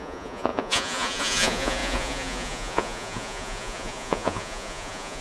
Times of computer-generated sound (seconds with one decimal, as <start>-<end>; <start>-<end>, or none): 0.0-5.2